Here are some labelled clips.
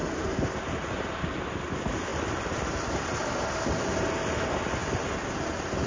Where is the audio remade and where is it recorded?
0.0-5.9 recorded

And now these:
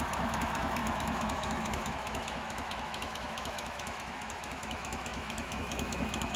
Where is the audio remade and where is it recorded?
0.0-6.4 remade